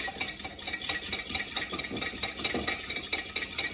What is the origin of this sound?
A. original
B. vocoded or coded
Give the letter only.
A